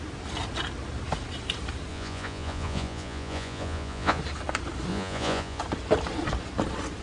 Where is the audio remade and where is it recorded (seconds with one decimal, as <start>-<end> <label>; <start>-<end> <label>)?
0.0-1.9 recorded; 1.9-4.2 remade; 4.2-4.9 recorded; 4.9-5.6 remade; 5.6-7.0 recorded